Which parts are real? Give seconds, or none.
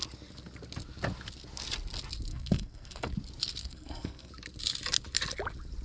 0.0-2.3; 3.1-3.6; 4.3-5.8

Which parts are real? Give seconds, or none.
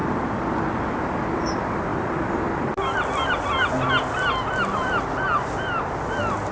0.7-6.5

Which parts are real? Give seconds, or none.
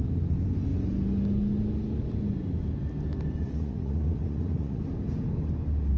0.0-3.4; 4.8-6.0